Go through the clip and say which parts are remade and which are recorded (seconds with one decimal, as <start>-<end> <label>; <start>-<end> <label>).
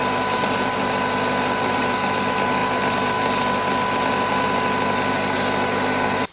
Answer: 0.0-6.3 recorded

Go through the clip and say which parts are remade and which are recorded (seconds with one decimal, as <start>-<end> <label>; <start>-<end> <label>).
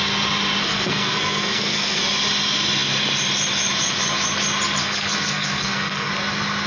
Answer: 0.0-0.6 recorded; 0.6-2.0 remade; 2.0-4.8 recorded; 4.8-6.1 remade; 6.1-6.7 recorded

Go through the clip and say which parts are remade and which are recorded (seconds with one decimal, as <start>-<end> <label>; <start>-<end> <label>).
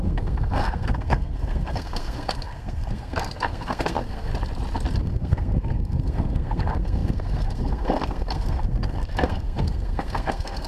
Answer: 0.0-4.3 remade; 4.3-5.0 recorded; 5.0-10.7 remade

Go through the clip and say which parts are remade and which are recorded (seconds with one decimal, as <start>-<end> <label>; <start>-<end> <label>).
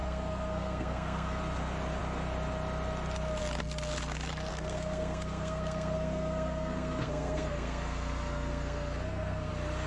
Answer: 0.0-1.4 remade; 1.4-4.5 recorded; 4.5-9.5 remade; 9.5-9.9 recorded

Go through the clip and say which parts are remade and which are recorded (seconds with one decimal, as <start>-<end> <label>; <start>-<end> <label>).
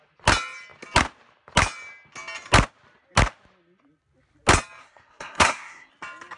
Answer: 0.0-4.8 recorded; 4.8-5.9 remade; 5.9-6.4 recorded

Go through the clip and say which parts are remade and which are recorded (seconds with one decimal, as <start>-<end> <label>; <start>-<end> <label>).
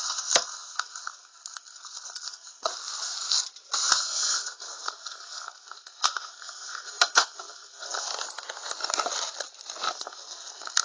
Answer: 0.0-2.7 remade; 2.7-3.9 recorded; 3.9-8.1 remade; 8.1-9.9 recorded; 9.9-10.8 remade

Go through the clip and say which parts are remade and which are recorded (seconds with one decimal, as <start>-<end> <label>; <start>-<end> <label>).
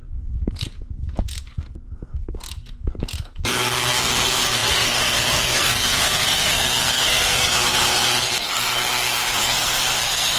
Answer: 0.0-10.4 remade